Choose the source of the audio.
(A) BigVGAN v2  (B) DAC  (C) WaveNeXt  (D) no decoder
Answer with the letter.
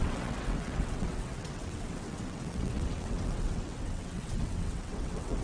C